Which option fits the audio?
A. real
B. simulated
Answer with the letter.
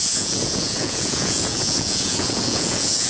B